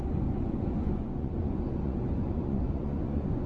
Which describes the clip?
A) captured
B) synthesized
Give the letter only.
B